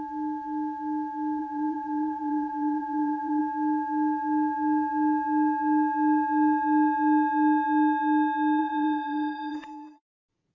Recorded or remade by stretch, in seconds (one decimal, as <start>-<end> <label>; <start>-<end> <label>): 0.0-1.4 recorded; 1.4-3.4 remade; 3.4-8.6 recorded; 8.6-10.5 remade